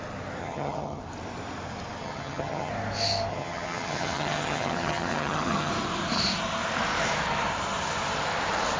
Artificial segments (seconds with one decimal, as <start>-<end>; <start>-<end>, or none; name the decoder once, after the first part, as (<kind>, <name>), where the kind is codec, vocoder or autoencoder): 0.4-1.0 (vocoder, HiFi-GAN); 2.0-2.7; 3.3-5.7